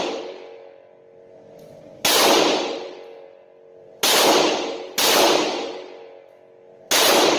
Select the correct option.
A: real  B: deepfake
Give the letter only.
B